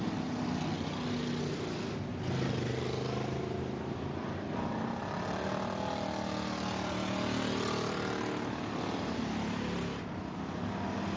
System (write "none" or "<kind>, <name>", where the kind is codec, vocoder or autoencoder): none